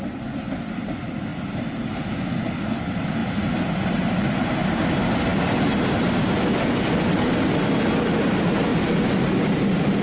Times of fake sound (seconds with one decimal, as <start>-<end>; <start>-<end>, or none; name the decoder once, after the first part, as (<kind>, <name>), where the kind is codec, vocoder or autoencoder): none